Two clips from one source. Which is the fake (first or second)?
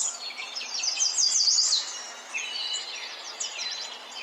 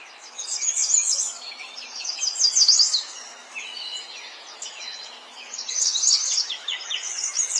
second